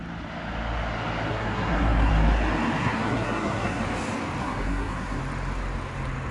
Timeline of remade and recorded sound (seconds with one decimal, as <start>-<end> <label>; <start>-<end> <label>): 0.0-1.3 recorded; 1.3-2.1 remade; 2.1-2.8 recorded; 2.8-3.8 remade; 3.8-4.4 recorded; 4.4-5.2 remade; 5.2-6.3 recorded